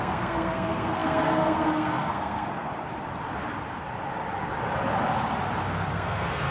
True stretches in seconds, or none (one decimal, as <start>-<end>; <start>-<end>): 2.7-5.9